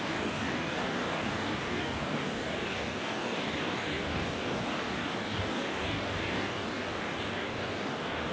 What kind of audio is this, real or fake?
fake